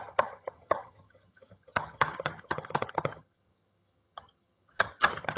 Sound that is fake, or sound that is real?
fake